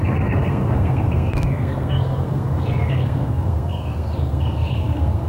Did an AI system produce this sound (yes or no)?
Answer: yes